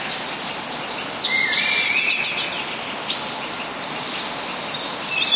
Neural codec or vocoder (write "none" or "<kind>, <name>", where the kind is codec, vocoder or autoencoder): none